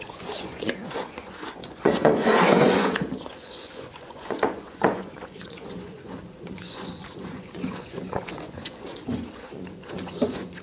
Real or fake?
fake